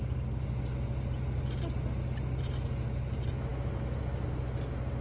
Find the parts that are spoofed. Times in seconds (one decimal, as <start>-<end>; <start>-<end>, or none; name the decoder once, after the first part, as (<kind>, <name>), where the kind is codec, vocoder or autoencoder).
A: none